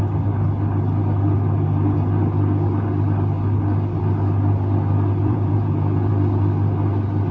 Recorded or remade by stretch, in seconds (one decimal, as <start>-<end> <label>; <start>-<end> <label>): 0.0-5.2 recorded; 5.2-6.1 remade; 6.1-7.3 recorded